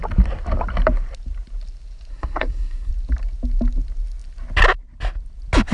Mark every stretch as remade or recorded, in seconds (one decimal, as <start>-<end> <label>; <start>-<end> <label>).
0.0-2.1 recorded; 2.1-2.9 remade; 2.9-5.7 recorded